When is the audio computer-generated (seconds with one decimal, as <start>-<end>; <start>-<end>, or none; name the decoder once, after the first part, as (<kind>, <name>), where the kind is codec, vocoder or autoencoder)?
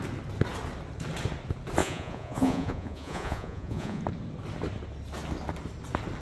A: 1.8-4.0 (vocoder, Vocos)